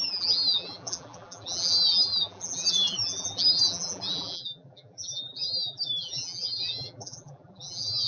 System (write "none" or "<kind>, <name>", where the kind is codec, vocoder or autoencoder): vocoder, BigVGAN v2